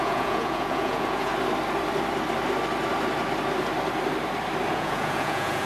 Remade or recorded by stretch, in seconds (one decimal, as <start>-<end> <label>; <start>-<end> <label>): 0.0-1.3 remade; 1.3-4.7 recorded; 4.7-5.7 remade